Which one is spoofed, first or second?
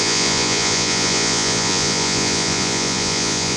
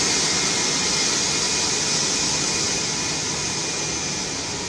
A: first